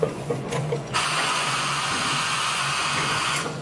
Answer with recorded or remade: remade